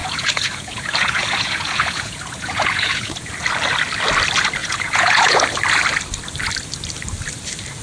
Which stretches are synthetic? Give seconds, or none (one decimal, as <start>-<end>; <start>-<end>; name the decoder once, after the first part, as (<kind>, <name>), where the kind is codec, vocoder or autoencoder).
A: 0.0-3.3 (vocoder, Vocos); 4.6-5.4

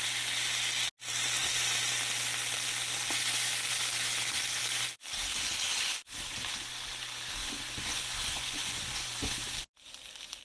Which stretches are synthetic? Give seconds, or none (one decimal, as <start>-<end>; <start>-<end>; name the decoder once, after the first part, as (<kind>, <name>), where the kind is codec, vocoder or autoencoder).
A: 7.4-9.3 (vocoder, Vocos)